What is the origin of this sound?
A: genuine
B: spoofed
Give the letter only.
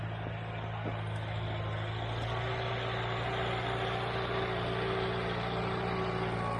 A